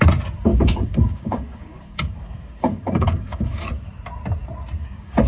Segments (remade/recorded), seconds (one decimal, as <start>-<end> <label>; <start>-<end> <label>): 0.0-0.5 recorded; 0.5-3.7 remade; 3.7-4.8 recorded; 4.8-5.3 remade

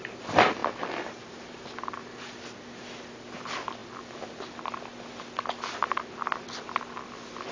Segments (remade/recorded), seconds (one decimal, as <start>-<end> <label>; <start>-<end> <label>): 0.0-7.5 recorded

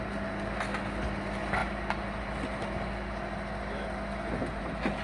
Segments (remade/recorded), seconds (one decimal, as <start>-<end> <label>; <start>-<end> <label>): 0.0-5.0 recorded

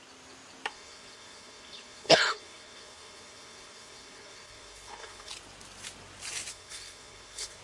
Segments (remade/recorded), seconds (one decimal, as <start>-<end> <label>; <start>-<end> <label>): 0.0-0.7 recorded; 0.7-5.3 remade; 5.3-6.5 recorded; 6.5-7.6 remade

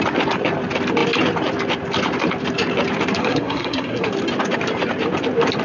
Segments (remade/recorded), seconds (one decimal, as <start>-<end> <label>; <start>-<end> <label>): 0.0-3.2 recorded; 3.2-4.1 remade; 4.1-5.6 recorded

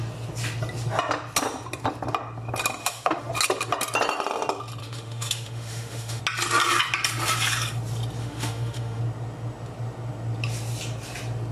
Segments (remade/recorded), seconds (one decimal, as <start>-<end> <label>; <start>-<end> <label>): 0.0-2.8 recorded; 2.8-3.3 remade; 3.3-4.8 recorded; 4.8-6.2 remade; 6.2-8.2 recorded; 8.2-9.0 remade; 9.0-11.5 recorded